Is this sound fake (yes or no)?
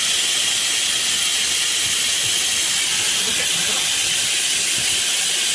no